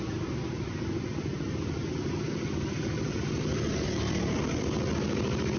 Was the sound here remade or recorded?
recorded